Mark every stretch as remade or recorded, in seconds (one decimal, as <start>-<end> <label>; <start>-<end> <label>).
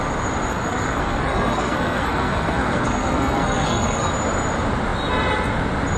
0.0-0.5 recorded; 0.5-4.1 remade; 4.1-6.0 recorded